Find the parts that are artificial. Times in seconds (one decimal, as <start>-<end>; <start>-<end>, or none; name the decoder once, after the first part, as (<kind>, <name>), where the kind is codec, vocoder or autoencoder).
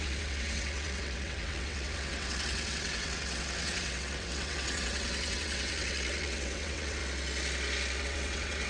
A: 0.0-7.0 (vocoder, WaveNeXt); 8.0-8.7